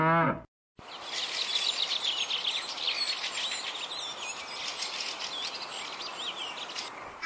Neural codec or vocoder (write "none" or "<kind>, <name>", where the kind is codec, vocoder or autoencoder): none